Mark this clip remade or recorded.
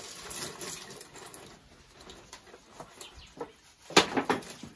recorded